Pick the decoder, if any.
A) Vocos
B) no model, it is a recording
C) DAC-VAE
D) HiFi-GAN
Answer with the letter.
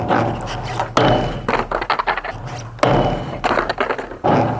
B